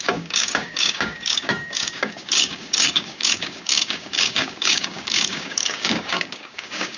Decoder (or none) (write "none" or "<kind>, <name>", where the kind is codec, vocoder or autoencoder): codec, DAC